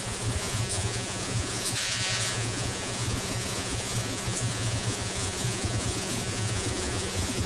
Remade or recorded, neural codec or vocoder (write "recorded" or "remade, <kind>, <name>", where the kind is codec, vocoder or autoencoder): remade, vocoder, Vocos